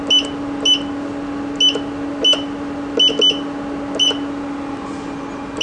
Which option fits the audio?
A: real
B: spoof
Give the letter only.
A